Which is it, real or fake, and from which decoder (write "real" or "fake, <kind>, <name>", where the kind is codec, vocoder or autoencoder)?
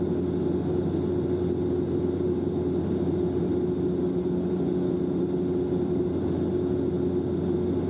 real